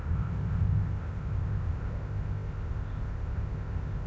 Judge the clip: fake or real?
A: fake